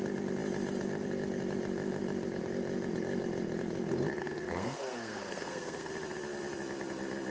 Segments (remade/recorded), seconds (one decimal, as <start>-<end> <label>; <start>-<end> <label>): 0.0-4.2 recorded; 4.2-5.9 remade; 5.9-7.3 recorded